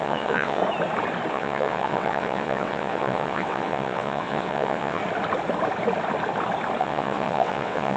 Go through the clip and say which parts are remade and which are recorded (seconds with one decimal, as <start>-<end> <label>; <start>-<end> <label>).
0.0-0.6 remade; 0.6-1.3 recorded; 1.3-5.0 remade; 5.0-6.8 recorded; 6.8-8.0 remade